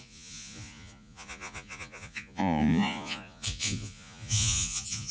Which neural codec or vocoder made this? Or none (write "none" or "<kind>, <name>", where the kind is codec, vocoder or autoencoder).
vocoder, Vocos